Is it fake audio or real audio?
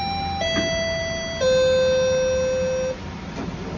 real